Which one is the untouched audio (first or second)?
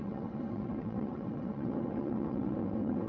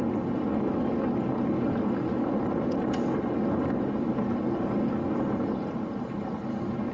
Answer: second